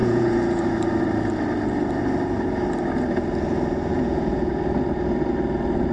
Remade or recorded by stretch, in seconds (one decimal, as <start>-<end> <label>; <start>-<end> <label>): 0.0-0.6 remade; 0.6-3.9 recorded; 3.9-4.5 remade; 4.5-5.9 recorded